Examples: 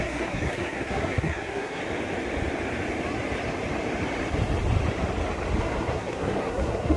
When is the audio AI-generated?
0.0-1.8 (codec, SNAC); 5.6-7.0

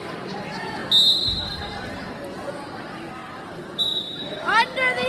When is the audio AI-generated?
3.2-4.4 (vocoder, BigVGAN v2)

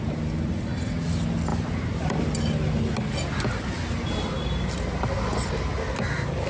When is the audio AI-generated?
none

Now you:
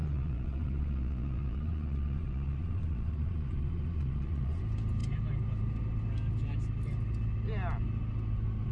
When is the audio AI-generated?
0.0-4.6 (vocoder, Vocos)

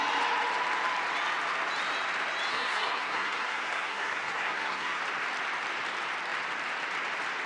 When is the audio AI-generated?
2.5-5.0 (codec, SNAC)

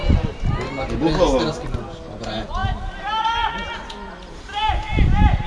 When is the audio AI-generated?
none